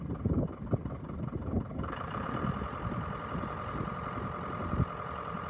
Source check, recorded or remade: recorded